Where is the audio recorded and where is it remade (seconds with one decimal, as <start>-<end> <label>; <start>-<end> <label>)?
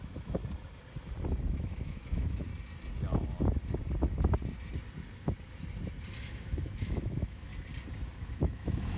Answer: 0.0-0.4 remade; 0.4-1.5 recorded; 1.5-2.5 remade; 2.5-6.2 recorded; 6.2-7.5 remade; 7.5-8.3 recorded; 8.3-9.0 remade